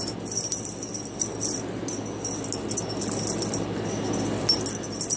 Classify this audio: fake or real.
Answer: real